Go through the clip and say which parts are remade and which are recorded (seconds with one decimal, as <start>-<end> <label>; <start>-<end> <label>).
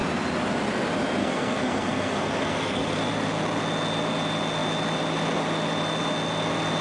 0.0-1.2 recorded; 1.2-3.0 remade; 3.0-6.8 recorded